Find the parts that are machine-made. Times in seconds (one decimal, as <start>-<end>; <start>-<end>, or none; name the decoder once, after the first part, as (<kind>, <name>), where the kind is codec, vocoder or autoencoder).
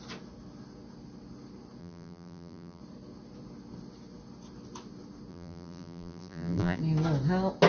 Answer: 1.8-2.8 (vocoder, BigVGAN v2); 5.3-6.8